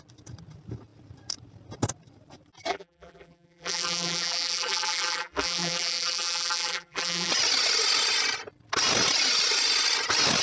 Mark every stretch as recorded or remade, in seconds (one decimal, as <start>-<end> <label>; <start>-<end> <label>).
0.0-2.7 recorded; 2.7-7.3 remade; 7.3-10.4 recorded